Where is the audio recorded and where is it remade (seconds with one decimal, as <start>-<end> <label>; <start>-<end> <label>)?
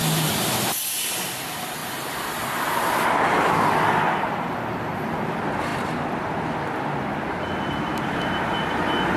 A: 0.0-9.2 recorded